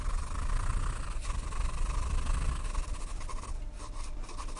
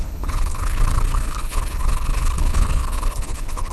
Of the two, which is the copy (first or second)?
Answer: second